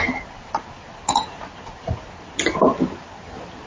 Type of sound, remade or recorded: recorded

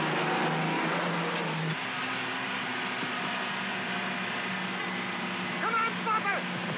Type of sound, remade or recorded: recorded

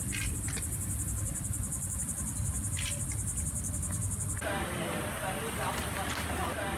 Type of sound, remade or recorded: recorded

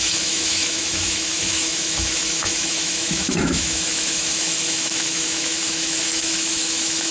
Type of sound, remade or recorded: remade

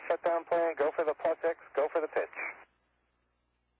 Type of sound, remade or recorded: recorded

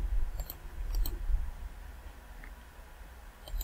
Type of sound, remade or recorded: recorded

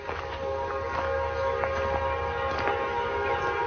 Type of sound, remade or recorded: recorded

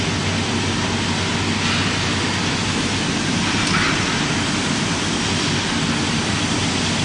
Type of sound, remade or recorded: recorded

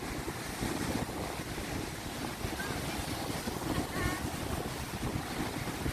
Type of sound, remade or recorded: recorded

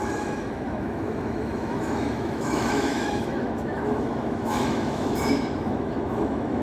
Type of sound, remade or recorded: remade